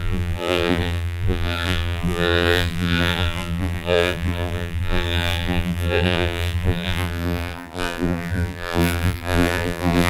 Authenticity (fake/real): fake